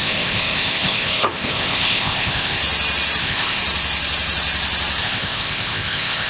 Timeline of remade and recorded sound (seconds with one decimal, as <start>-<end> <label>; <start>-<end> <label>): 0.0-2.6 remade; 2.6-3.2 recorded; 3.2-3.6 remade; 3.6-5.0 recorded; 5.0-6.3 remade